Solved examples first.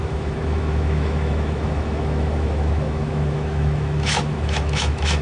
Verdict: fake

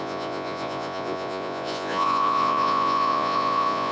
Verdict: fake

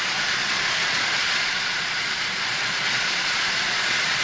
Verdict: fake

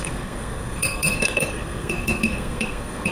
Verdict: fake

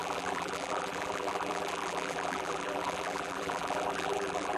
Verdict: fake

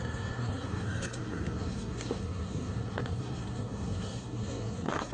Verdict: fake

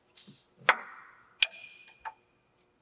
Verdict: real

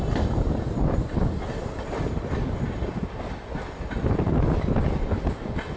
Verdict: real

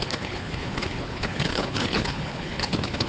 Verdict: fake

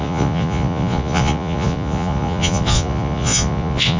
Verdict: fake